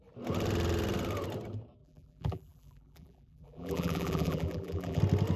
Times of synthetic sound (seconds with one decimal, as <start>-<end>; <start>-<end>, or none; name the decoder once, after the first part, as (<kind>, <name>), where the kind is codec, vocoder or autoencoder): 1.8-5.0 (vocoder, BigVGAN v2)